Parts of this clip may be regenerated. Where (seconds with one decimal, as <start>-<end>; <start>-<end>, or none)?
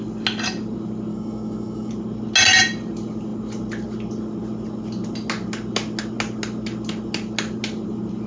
1.1-1.9